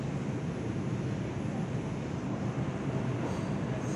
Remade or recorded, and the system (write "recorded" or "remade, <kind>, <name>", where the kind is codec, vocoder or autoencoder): recorded